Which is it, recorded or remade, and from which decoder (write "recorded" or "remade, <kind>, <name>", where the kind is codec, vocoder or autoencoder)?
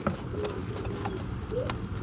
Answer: recorded